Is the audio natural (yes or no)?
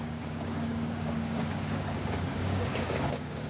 no